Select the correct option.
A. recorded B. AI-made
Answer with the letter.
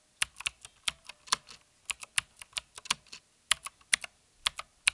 A